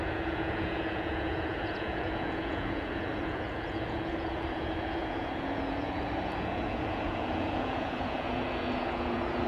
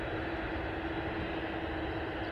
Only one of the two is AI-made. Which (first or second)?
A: first